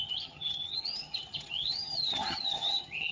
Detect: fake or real fake